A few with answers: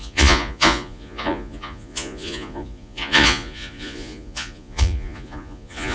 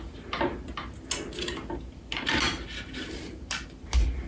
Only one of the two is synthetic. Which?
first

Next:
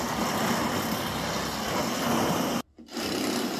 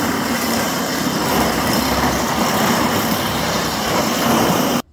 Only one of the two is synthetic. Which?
second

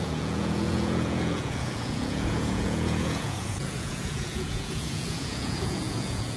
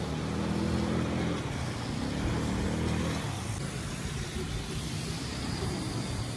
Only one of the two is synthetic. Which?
first